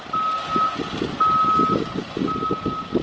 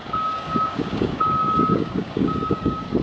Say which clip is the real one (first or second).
first